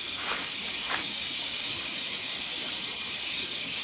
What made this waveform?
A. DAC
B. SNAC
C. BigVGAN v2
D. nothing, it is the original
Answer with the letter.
A